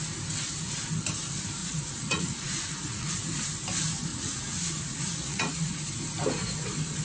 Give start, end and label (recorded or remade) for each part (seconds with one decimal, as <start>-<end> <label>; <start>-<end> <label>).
0.0-1.6 recorded; 1.6-3.1 remade; 3.1-4.1 recorded; 4.1-5.8 remade; 5.8-7.0 recorded